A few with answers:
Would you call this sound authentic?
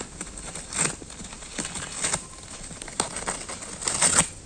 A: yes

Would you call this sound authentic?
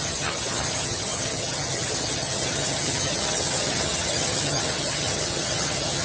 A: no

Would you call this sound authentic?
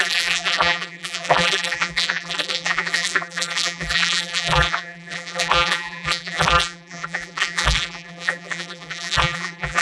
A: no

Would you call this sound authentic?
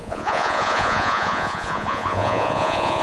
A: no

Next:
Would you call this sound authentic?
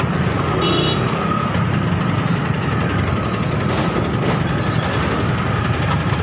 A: yes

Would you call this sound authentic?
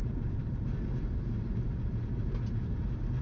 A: no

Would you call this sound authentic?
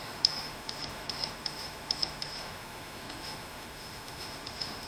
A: no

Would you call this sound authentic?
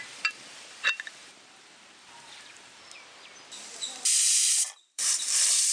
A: no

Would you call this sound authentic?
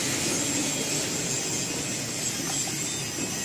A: yes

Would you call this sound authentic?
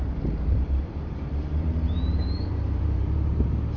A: no